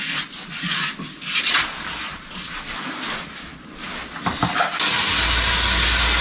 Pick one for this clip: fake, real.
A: real